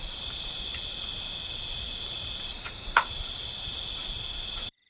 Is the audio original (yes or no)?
no